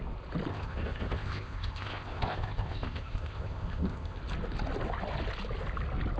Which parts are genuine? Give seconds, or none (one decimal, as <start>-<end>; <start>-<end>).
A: 0.0-0.5; 4.2-6.2